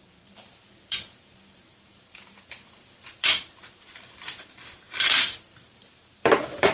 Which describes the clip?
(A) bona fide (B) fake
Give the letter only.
B